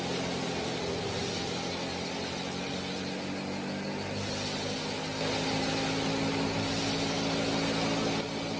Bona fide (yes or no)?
yes